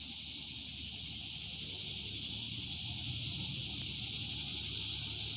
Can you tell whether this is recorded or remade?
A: recorded